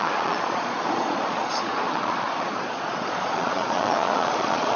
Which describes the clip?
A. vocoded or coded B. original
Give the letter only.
A